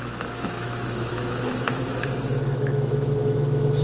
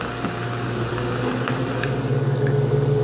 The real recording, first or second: second